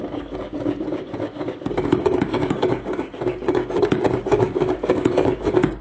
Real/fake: fake